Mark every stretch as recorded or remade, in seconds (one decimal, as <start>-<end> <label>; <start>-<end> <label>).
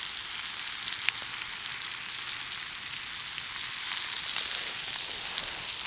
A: 0.0-5.9 recorded